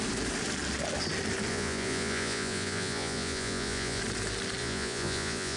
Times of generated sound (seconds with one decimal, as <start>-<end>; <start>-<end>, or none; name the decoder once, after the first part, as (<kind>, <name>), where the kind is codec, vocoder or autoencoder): 1.5-4.0 (vocoder, Vocos); 4.6-5.6